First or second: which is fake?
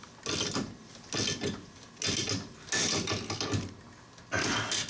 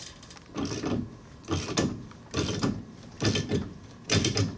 second